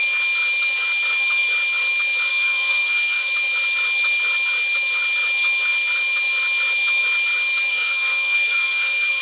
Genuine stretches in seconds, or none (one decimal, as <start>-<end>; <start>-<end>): 0.0-2.3; 3.3-7.7